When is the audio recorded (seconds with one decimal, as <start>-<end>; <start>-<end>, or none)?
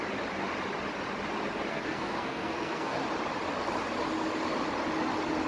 0.0-1.7; 3.0-5.5